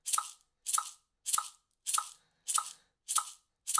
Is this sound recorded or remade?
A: recorded